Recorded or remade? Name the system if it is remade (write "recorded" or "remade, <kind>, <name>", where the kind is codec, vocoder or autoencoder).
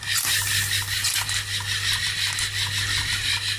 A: recorded